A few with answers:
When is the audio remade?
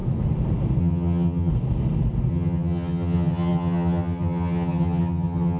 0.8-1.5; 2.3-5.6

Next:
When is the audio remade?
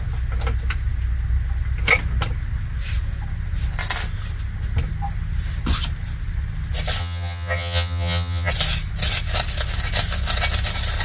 7.0-8.5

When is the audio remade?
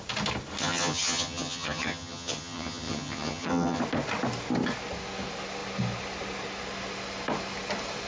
0.6-3.8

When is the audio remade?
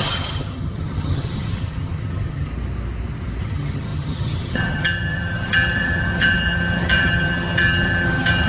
0.0-2.5; 3.4-8.5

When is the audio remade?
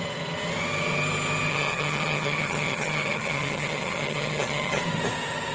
1.5-4.8